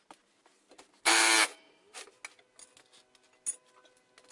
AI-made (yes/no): no